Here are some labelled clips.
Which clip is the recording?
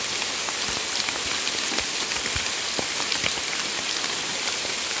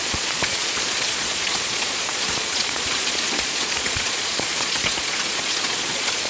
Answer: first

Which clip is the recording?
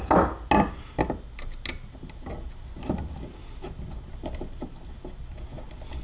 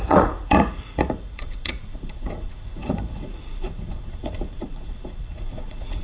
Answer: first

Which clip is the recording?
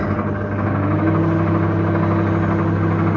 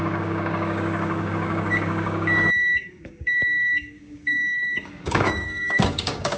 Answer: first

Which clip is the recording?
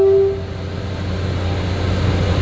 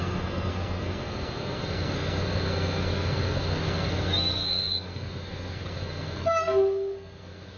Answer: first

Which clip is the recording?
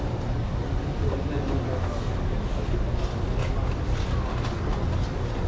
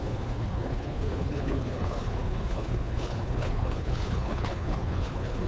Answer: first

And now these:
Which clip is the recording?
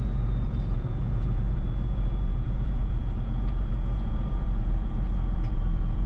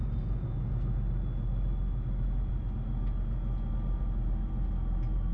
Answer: second